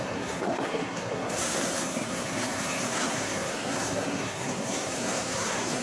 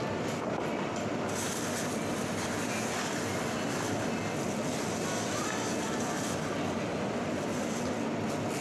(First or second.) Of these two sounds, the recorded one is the second